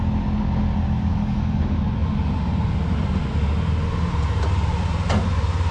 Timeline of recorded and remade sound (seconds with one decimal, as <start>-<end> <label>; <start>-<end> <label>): 0.0-1.1 recorded; 1.1-1.6 remade; 1.6-5.7 recorded

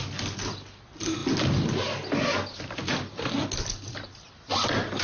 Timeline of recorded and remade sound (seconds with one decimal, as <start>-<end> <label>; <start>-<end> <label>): 0.0-5.0 recorded